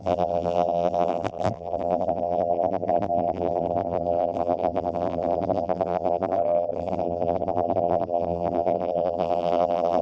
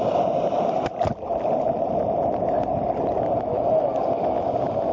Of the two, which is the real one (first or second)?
second